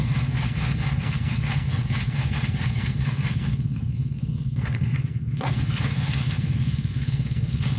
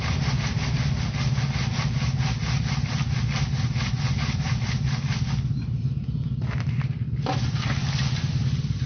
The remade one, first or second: first